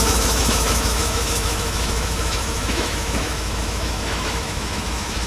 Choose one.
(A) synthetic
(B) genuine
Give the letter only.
A